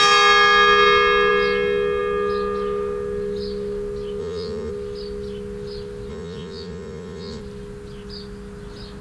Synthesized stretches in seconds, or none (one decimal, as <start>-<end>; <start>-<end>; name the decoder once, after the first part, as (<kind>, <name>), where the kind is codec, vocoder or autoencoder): 4.2-4.7 (vocoder, Vocos); 6.1-7.4